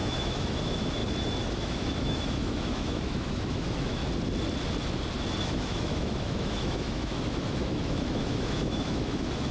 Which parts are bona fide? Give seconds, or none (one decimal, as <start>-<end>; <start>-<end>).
1.0-1.5; 4.0-5.4